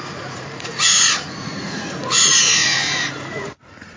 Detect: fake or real fake